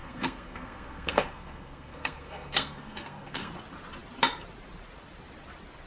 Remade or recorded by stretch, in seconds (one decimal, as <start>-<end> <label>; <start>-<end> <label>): 0.0-3.5 remade; 3.5-5.9 recorded